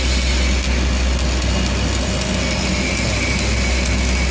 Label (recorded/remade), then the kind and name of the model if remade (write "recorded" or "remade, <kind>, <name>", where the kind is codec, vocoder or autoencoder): recorded